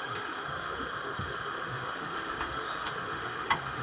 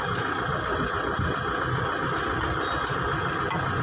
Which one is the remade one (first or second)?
first